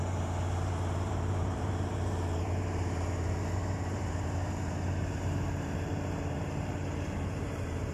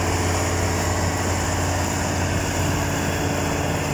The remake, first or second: first